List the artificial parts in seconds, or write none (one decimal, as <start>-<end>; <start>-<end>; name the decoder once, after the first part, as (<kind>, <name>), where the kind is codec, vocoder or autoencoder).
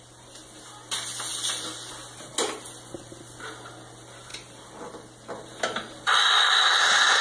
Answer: none